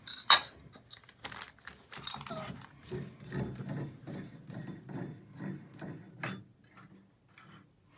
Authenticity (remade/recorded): recorded